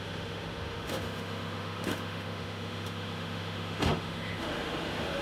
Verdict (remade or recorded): remade